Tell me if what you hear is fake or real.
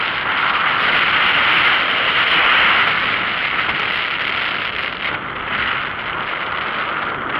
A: real